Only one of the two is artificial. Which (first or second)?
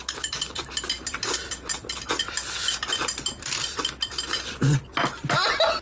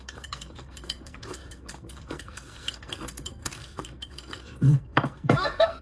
second